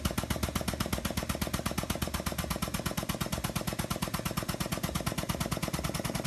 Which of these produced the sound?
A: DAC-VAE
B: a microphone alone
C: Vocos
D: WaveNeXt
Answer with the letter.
B